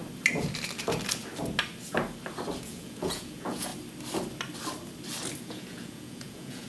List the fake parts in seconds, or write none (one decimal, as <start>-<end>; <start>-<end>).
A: 2.6-3.7; 5.4-6.7

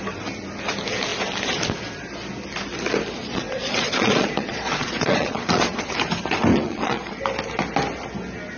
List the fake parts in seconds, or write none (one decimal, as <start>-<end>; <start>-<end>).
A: 3.2-5.9; 6.5-7.2

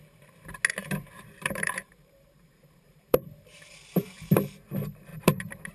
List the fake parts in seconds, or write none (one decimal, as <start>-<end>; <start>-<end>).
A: 0.8-4.2; 5.1-5.7

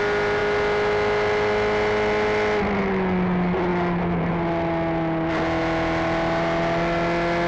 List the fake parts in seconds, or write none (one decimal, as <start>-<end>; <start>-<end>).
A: none

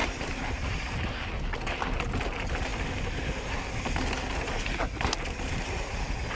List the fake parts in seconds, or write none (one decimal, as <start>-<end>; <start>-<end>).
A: none

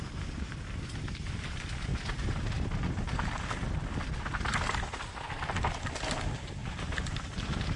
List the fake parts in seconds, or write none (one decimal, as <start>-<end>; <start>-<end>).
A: 6.6-7.8

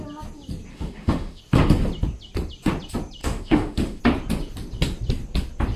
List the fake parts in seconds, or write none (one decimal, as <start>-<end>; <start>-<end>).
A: 0.7-1.4; 3.2-4.0

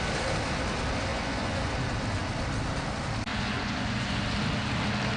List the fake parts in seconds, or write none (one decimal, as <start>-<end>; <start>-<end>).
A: 1.1-1.7; 3.3-4.2